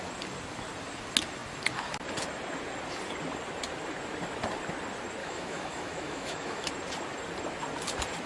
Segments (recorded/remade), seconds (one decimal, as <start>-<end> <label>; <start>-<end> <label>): 0.0-5.2 recorded; 5.2-6.7 remade; 6.7-8.3 recorded